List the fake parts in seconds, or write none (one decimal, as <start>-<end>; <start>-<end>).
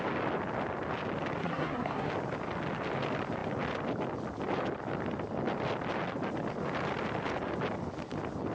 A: 1.4-2.1